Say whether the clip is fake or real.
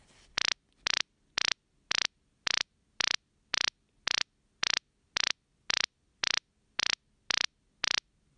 real